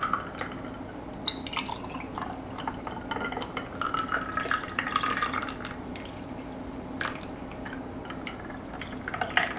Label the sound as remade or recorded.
recorded